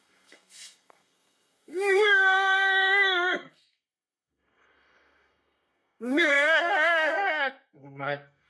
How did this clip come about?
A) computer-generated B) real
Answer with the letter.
A